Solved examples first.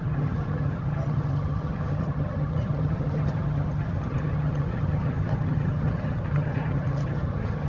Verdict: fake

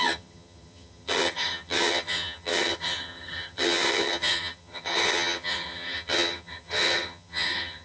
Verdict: fake